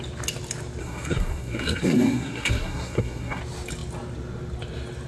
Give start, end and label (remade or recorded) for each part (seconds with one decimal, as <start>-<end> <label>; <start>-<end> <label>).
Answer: 0.0-0.8 recorded; 0.8-3.4 remade; 3.4-5.1 recorded